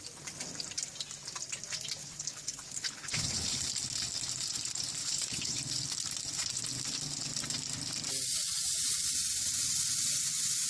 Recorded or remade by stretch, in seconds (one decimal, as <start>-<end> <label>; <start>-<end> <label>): 0.0-2.0 recorded; 2.0-3.6 remade; 3.6-5.0 recorded; 5.0-5.6 remade; 5.6-10.7 recorded